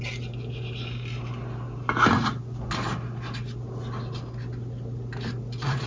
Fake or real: real